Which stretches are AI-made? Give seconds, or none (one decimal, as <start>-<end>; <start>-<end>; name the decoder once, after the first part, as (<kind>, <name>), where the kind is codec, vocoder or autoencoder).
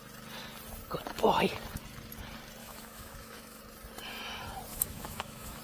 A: 2.6-3.6 (autoencoder, DAC-VAE); 4.7-5.6